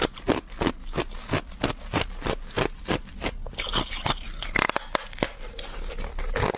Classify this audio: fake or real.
real